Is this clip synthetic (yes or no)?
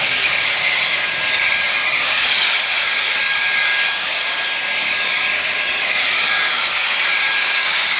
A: yes